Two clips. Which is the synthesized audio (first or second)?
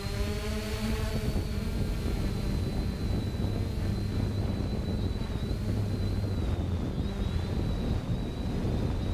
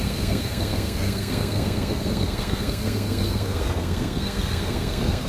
second